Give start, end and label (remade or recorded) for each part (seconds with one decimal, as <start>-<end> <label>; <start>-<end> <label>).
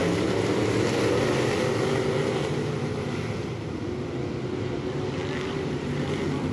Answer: 0.0-6.5 recorded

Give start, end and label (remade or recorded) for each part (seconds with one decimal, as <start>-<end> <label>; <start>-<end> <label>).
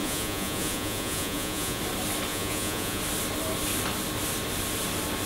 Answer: 0.0-1.8 remade; 1.8-2.3 recorded; 2.3-3.0 remade; 3.0-5.3 recorded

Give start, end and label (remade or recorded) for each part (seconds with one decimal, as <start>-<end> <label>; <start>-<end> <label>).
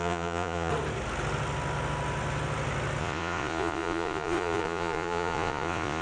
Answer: 0.0-0.7 remade; 0.7-3.0 recorded; 3.0-6.0 remade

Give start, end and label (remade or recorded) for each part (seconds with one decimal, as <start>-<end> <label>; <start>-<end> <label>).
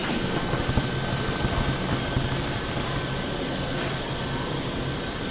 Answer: 0.0-3.2 recorded; 3.2-5.3 remade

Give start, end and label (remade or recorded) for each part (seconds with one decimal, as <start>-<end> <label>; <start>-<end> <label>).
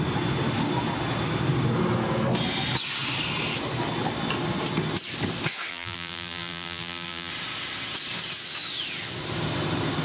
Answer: 0.0-5.7 recorded; 5.7-7.3 remade; 7.3-10.0 recorded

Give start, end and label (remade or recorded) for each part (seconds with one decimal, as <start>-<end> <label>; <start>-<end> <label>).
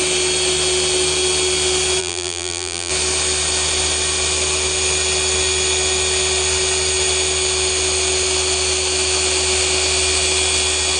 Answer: 0.0-2.0 recorded; 2.0-2.9 remade; 2.9-11.0 recorded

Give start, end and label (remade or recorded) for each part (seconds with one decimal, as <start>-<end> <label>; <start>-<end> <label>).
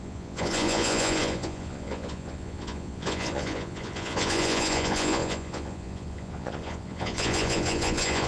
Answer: 0.0-8.3 remade